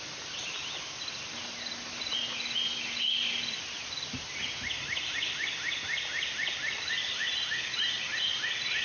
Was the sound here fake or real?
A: real